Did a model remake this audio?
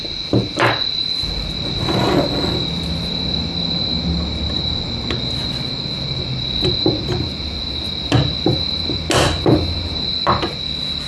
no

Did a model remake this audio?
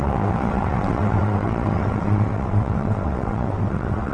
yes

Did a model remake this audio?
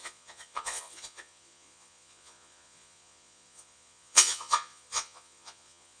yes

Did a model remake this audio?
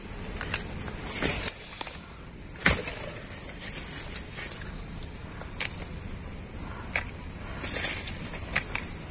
no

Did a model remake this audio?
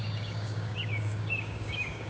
yes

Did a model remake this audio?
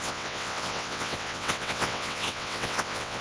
yes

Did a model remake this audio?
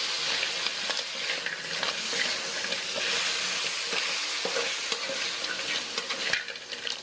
no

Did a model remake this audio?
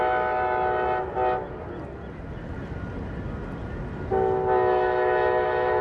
no